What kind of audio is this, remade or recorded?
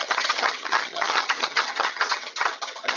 remade